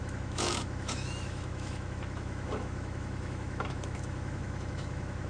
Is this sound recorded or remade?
remade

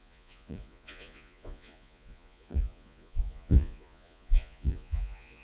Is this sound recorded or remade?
remade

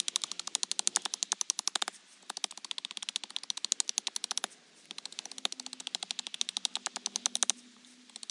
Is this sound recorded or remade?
recorded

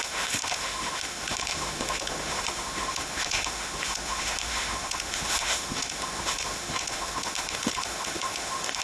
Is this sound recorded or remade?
remade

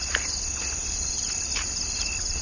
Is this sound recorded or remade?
recorded